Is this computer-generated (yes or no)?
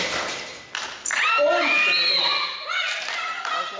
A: no